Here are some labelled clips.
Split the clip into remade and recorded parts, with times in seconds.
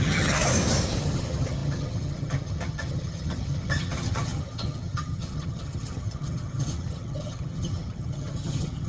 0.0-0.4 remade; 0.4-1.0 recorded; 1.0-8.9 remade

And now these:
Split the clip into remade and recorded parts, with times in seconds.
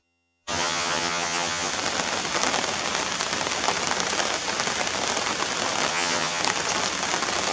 0.0-1.7 remade; 1.7-5.9 recorded; 5.9-6.4 remade; 6.4-7.5 recorded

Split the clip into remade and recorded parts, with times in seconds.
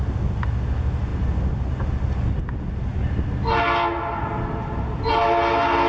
0.0-5.9 recorded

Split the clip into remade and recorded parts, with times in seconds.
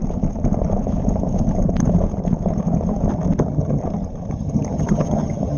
0.0-3.4 recorded; 3.4-3.8 remade; 3.8-4.3 recorded; 4.3-5.6 remade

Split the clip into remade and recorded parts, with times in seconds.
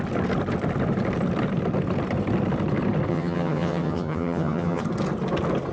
0.0-3.1 recorded; 3.1-4.8 remade; 4.8-5.7 recorded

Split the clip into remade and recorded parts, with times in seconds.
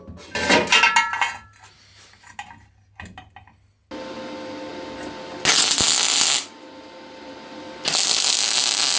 0.0-9.0 recorded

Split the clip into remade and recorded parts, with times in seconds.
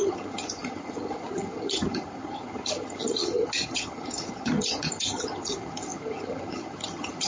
0.0-7.3 remade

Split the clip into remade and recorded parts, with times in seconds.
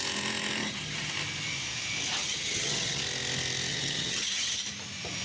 0.0-0.6 recorded; 0.6-1.1 remade; 1.1-2.2 recorded; 2.2-3.0 remade; 3.0-3.7 recorded; 3.7-4.6 remade; 4.6-5.2 recorded